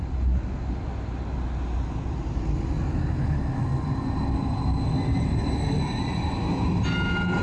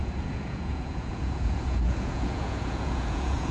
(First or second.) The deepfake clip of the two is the second